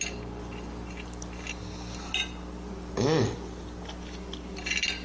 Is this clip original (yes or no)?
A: yes